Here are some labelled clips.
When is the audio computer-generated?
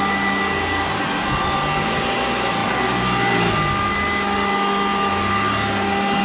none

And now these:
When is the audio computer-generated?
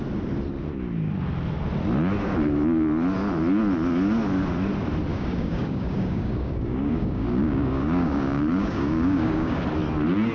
5.1-9.6 (codec, DAC)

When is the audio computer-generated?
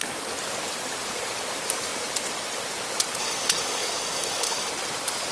3.2-4.7 (codec, DAC)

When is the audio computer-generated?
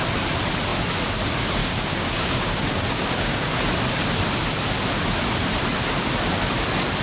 1.6-3.6 (codec, DAC)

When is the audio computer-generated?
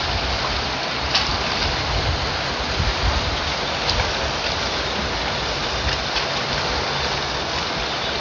none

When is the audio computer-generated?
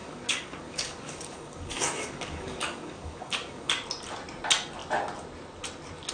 0.0-3.7 (codec, DAC)